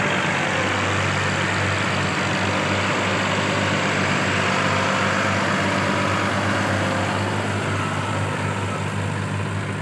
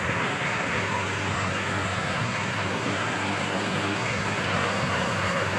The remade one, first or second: second